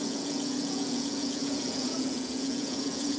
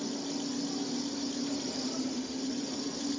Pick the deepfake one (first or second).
first